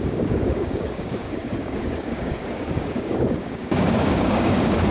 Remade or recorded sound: remade